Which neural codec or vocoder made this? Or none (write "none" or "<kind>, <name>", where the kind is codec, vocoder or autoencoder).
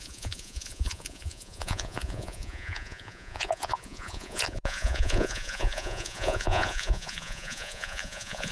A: vocoder, Vocos